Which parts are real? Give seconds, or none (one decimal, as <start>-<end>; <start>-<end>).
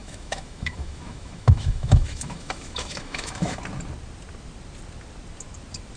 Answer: 3.6-6.0